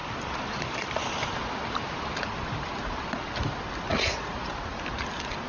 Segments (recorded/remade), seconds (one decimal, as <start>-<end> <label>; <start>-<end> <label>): 0.0-3.9 recorded; 3.9-4.5 remade; 4.5-5.5 recorded

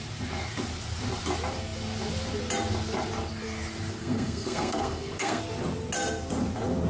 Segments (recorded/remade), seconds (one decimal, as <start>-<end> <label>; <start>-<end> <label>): 0.0-4.0 recorded; 4.0-5.4 remade; 5.4-6.9 recorded